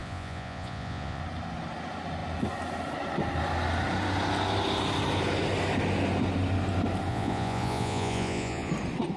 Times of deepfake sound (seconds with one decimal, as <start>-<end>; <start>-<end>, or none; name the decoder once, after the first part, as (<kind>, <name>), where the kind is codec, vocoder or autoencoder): 0.0-1.2 (vocoder, Vocos); 7.1-8.7